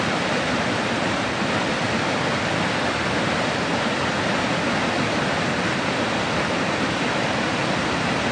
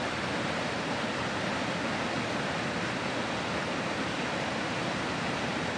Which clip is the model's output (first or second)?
first